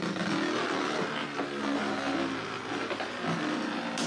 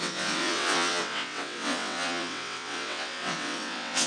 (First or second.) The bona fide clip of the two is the first